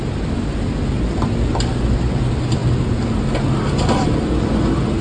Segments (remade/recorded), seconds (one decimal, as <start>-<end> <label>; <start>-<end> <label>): 0.0-5.0 recorded